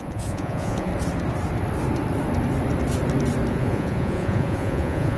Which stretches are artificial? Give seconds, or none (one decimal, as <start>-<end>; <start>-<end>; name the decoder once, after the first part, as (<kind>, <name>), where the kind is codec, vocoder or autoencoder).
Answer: 0.0-0.9 (vocoder, Vocos); 3.5-5.2